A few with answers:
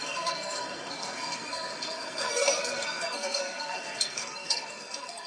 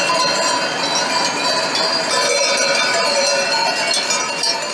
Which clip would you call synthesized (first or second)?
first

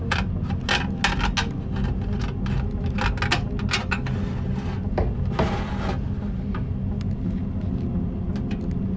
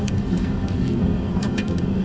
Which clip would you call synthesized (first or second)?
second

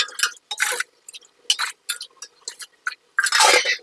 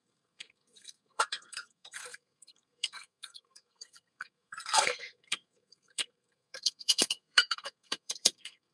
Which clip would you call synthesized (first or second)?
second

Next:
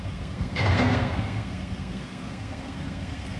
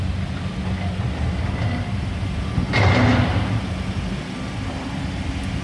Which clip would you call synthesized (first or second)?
first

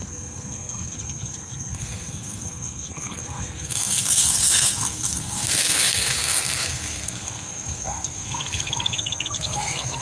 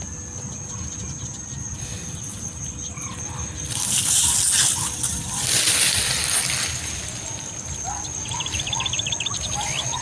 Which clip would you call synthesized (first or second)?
first